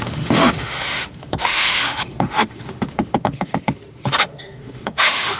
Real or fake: fake